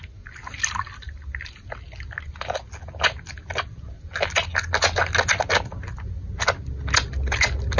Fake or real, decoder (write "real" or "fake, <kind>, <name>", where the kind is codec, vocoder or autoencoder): real